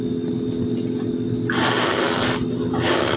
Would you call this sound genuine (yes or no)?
yes